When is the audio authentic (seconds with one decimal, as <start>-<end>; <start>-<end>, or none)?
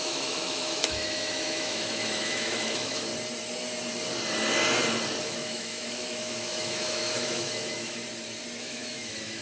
3.1-5.2; 8.0-8.6